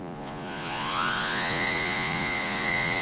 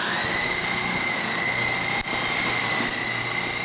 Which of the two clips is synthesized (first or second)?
first